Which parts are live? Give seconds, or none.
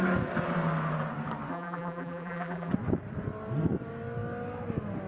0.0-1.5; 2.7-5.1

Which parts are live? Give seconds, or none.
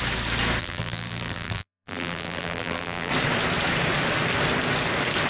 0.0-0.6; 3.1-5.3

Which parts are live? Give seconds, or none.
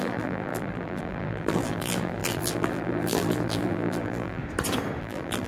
4.4-5.0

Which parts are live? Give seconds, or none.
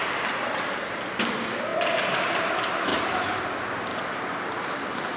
0.0-1.7; 2.5-2.9; 3.4-5.2